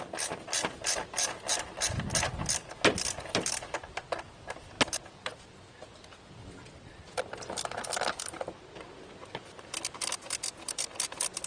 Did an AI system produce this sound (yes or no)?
no